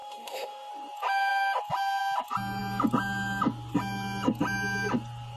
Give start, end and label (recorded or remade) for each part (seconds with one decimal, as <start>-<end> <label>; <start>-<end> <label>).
0.0-0.7 remade; 0.7-5.4 recorded